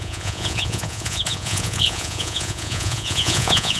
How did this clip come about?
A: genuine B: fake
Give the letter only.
B